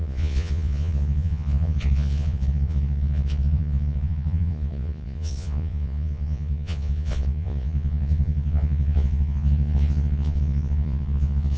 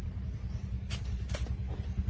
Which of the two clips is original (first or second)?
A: second